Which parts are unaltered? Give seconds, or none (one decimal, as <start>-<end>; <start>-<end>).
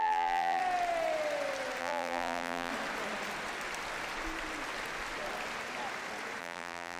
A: 0.6-1.8; 2.7-6.4